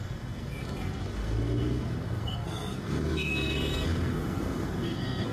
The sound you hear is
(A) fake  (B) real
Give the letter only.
A